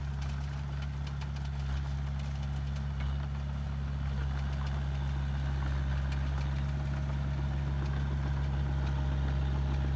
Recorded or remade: recorded